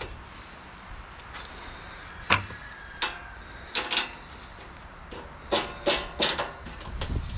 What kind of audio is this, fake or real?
real